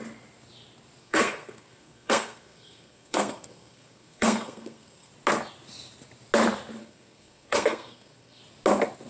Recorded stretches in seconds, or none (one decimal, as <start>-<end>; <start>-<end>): 0.0-1.0; 5.1-6.8; 8.4-9.1

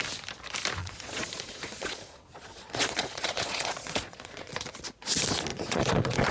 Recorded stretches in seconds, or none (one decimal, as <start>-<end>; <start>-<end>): 0.0-0.8; 4.5-5.5

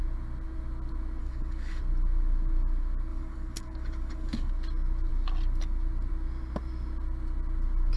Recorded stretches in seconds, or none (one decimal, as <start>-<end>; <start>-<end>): 0.0-1.2; 1.8-3.1; 4.5-8.0

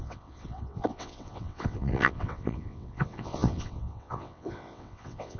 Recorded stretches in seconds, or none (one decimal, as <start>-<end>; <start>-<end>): none

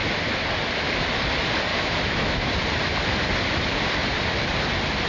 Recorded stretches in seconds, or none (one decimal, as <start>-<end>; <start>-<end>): 0.0-1.7; 2.5-5.1

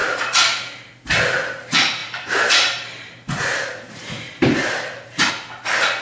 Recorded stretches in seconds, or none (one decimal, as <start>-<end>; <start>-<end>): 0.0-2.0; 5.3-6.0

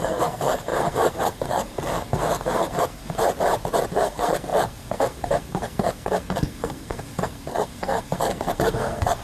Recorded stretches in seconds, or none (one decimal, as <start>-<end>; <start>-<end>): 3.2-3.9